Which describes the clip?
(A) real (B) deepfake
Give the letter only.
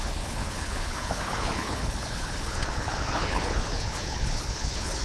B